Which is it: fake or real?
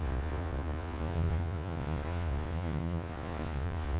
fake